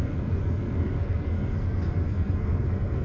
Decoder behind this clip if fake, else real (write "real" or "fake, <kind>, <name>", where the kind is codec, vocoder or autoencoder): fake, codec, SNAC